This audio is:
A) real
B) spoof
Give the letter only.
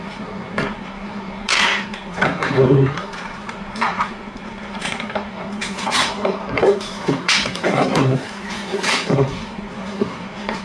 B